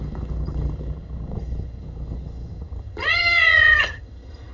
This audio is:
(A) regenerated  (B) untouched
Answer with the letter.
A